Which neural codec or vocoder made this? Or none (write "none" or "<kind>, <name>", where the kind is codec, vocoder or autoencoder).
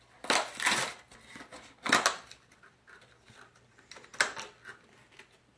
none